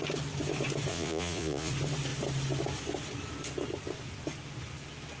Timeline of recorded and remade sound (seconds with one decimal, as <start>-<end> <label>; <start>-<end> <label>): 0.0-0.9 recorded; 0.9-1.7 remade; 1.7-5.2 recorded